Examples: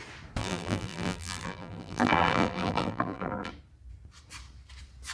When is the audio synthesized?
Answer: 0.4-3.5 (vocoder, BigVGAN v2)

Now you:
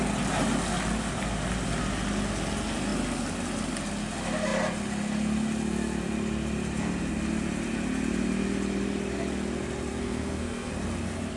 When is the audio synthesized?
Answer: 9.9-10.7 (codec, SNAC)

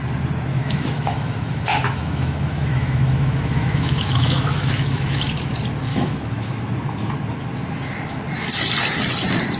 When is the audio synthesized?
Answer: 0.5-5.5 (autoencoder, DAC-VAE); 5.9-6.6